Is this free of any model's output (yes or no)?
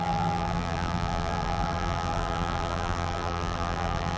no